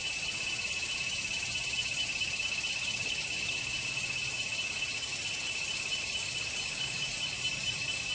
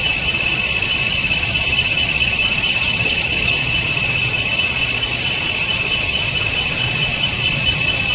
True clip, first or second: first